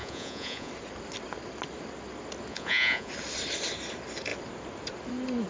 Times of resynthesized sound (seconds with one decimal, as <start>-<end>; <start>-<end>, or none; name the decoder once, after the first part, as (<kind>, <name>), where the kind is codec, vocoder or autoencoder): 0.0-0.7 (vocoder, Vocos); 2.5-3.1